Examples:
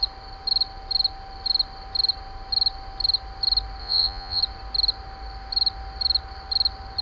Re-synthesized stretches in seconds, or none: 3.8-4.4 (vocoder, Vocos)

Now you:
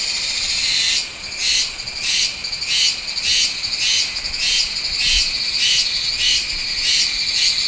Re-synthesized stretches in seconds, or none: 0.0-2.4 (vocoder, Vocos); 6.9-7.7

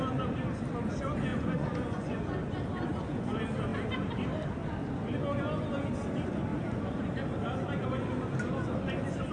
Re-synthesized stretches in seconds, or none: 1.3-2.2 (vocoder, Vocos)